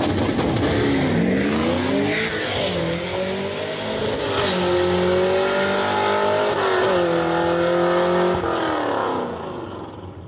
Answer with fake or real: real